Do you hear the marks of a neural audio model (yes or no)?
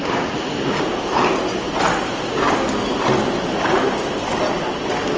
no